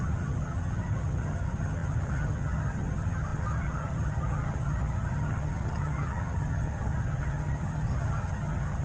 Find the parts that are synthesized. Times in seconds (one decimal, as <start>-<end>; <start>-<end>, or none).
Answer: 0.0-8.8